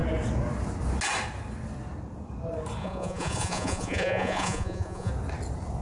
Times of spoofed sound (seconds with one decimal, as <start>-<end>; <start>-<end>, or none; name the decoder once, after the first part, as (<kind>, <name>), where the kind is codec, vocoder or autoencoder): 2.8-5.1 (vocoder, Vocos)